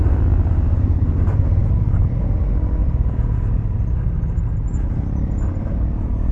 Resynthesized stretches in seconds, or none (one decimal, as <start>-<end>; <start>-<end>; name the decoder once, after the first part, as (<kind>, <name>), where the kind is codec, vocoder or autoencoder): none